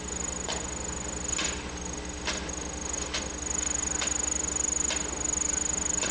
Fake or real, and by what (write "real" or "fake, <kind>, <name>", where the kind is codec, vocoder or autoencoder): real